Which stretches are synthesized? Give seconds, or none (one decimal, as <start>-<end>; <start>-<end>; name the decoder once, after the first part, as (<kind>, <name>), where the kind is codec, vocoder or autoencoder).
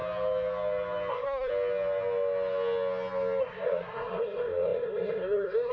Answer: 1.1-1.5 (codec, SNAC); 3.4-5.7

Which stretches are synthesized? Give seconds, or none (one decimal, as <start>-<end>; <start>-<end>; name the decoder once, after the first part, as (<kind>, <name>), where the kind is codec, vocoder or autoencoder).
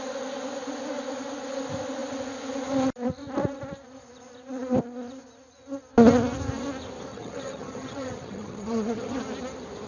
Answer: 7.1-9.2 (vocoder, HiFi-GAN)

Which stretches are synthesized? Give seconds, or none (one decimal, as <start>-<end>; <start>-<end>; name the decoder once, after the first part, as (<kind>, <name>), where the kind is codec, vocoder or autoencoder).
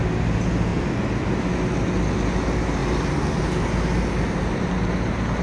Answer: none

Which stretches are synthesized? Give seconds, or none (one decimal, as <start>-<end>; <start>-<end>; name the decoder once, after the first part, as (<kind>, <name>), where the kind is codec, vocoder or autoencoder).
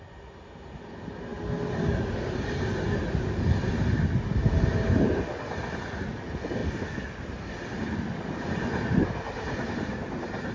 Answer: none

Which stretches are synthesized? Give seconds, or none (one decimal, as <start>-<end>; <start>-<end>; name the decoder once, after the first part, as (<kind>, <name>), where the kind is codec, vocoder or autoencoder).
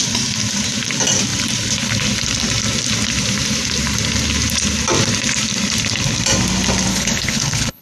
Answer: 6.9-7.8 (codec, HILCodec)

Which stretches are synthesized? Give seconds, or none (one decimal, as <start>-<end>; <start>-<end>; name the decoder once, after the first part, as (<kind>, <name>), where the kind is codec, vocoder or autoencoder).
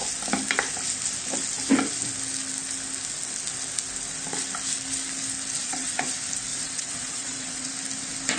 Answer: 5.6-6.1 (vocoder, WaveNeXt); 6.5-7.7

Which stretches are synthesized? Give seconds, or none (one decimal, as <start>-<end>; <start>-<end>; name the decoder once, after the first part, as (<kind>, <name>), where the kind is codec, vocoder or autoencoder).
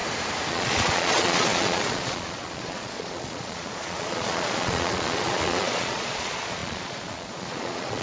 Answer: 0.5-8.0 (vocoder, Vocos)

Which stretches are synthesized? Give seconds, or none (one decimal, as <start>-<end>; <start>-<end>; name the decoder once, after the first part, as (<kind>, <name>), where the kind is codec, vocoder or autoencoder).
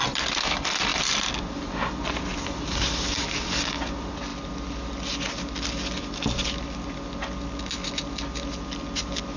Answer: none